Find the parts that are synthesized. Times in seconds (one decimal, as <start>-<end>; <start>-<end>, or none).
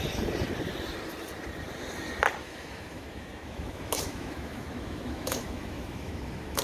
2.4-6.6